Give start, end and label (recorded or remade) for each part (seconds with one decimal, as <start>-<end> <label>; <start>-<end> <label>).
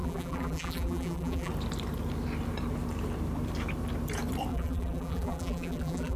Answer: 0.0-1.5 remade; 1.5-4.5 recorded; 4.5-6.2 remade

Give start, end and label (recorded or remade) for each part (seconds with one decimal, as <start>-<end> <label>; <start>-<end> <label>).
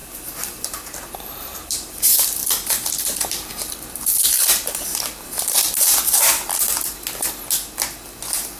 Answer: 0.0-2.4 remade; 2.4-3.2 recorded; 3.2-6.5 remade; 6.5-8.6 recorded